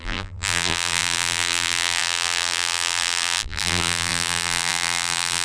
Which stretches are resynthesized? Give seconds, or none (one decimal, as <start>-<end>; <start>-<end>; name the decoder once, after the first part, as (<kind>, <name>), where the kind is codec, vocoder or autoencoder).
0.0-5.4 (vocoder, BigVGAN v2)